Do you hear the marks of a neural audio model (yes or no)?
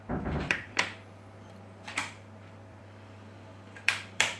yes